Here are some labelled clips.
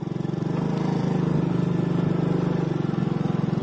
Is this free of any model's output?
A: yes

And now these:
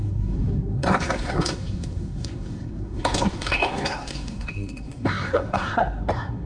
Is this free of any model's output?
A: no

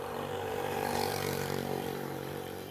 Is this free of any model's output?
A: no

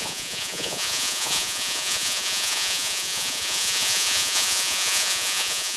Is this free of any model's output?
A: no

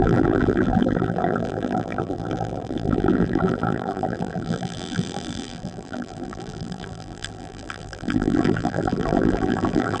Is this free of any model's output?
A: no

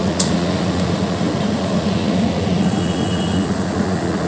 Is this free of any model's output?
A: no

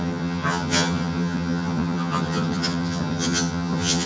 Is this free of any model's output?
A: no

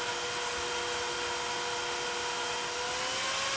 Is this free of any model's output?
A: yes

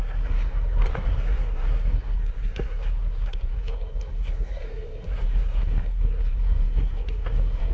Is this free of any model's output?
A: no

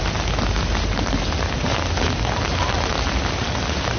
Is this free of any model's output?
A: yes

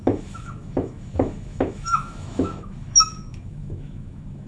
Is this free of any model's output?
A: no